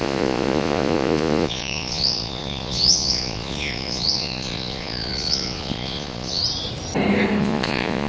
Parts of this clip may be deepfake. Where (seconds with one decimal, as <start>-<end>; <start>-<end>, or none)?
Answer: 0.0-6.4; 7.4-8.1